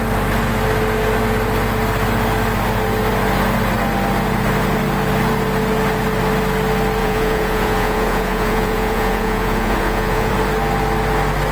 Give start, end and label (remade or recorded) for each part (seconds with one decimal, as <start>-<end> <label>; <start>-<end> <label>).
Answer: 0.0-7.0 recorded; 7.0-10.3 remade; 10.3-11.5 recorded